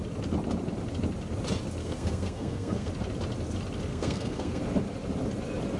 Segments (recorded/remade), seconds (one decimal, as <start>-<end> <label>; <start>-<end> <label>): 0.0-1.8 recorded; 1.8-2.9 remade; 2.9-3.9 recorded; 3.9-4.6 remade; 4.6-5.8 recorded